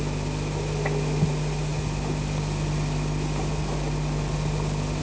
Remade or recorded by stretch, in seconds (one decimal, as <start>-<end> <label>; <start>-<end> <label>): 0.0-5.0 recorded